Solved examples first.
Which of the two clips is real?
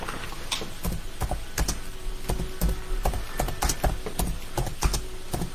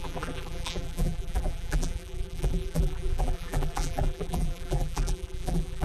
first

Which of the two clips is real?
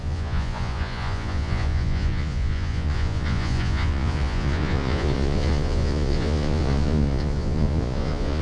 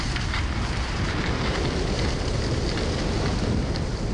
second